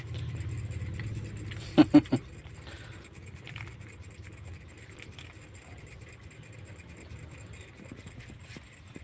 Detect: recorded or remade recorded